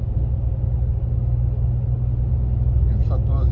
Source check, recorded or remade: recorded